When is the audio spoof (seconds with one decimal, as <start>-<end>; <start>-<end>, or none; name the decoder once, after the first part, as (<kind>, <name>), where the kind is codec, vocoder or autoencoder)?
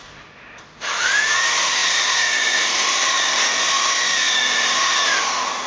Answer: none